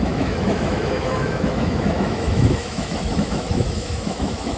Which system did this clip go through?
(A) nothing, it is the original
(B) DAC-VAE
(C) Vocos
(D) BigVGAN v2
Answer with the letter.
B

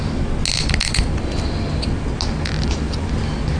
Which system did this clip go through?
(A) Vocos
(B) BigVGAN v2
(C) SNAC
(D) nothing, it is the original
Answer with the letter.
D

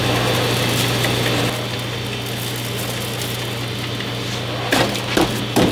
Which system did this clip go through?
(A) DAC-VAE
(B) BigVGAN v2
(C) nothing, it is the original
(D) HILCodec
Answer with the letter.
C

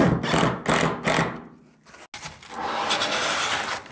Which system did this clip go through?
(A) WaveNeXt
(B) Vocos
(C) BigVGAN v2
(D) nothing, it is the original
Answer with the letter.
D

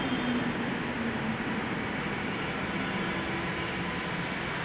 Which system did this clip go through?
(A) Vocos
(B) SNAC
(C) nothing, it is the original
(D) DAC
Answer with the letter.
C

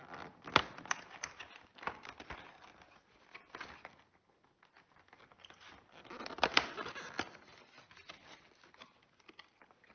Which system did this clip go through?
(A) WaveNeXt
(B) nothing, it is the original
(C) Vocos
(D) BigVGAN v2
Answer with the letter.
B